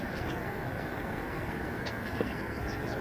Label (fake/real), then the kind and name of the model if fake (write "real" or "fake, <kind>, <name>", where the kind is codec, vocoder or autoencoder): fake, codec, SNAC